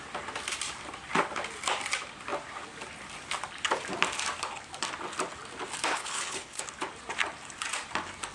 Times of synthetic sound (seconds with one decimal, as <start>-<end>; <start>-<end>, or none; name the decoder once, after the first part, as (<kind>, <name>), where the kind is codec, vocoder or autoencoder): 5.9-6.6 (codec, HILCodec)